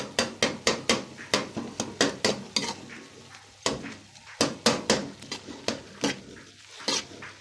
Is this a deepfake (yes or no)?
no